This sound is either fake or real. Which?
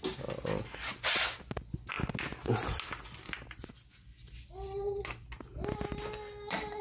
real